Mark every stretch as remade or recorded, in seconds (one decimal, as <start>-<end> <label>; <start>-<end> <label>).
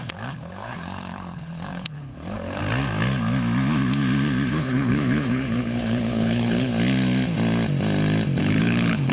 0.0-2.6 remade; 2.6-4.5 recorded; 4.5-6.7 remade; 6.7-8.4 recorded; 8.4-9.1 remade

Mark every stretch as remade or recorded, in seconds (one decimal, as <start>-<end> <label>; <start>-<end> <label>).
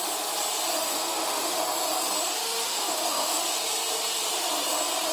0.0-0.8 recorded; 0.8-1.6 remade; 1.6-2.4 recorded; 2.4-3.4 remade; 3.4-5.1 recorded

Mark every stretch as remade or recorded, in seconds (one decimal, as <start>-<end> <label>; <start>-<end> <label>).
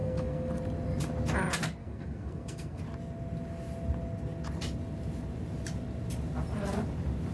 0.0-0.5 remade; 0.5-1.8 recorded; 1.8-2.8 remade; 2.8-7.3 recorded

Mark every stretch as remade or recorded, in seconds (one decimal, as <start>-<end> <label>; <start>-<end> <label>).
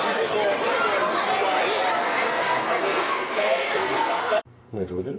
0.0-2.0 recorded; 2.0-5.2 remade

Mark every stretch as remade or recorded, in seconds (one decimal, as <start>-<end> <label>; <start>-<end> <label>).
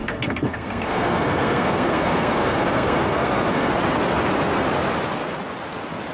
0.0-3.7 remade; 3.7-6.1 recorded